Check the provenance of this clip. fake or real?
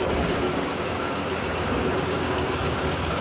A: fake